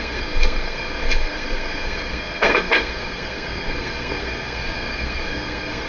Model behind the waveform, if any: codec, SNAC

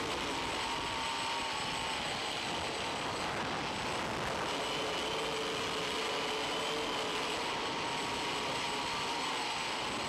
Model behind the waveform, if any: none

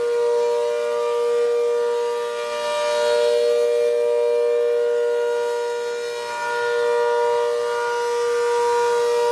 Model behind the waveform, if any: none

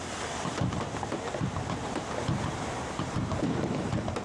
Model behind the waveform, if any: vocoder, BigVGAN v2